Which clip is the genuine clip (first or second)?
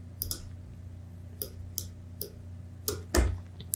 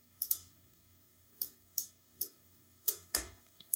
first